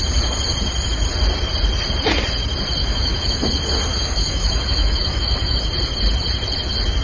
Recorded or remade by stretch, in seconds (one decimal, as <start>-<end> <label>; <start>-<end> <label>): 0.0-2.8 recorded; 2.8-3.4 remade; 3.4-3.9 recorded; 3.9-5.6 remade; 5.6-7.0 recorded